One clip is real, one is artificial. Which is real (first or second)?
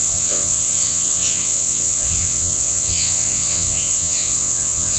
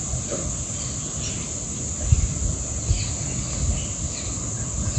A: second